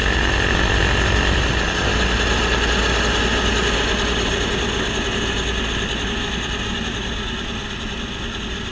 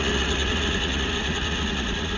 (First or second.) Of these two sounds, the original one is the first